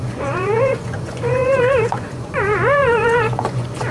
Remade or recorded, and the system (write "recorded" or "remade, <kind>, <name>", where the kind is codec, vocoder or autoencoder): remade, vocoder, Vocos